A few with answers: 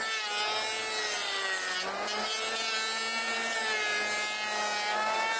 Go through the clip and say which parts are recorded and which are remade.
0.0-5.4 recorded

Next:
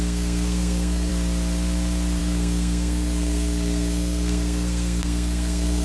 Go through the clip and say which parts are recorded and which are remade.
0.0-1.1 remade; 1.1-2.2 recorded; 2.2-5.8 remade